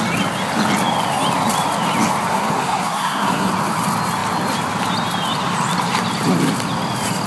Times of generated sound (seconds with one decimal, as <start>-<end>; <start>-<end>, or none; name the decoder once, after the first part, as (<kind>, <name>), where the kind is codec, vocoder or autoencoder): 2.3-3.5 (codec, SNAC)